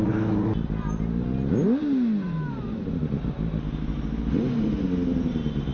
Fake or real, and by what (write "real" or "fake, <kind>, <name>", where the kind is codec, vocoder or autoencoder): real